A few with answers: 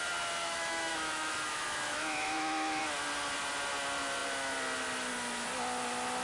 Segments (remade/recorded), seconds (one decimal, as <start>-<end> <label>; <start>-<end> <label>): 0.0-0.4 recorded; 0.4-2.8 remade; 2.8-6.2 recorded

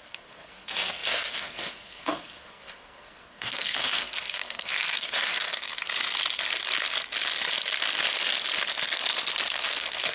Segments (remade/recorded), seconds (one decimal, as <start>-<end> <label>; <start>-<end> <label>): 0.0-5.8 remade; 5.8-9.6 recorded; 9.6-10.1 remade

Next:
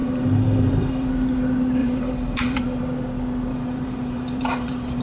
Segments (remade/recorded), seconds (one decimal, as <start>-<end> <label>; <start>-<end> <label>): 0.0-1.1 remade; 1.1-1.8 recorded; 1.8-2.8 remade; 2.8-3.5 recorded; 3.5-5.0 remade

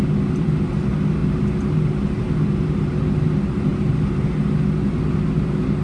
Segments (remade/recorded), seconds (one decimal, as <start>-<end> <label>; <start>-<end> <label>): 0.0-5.8 recorded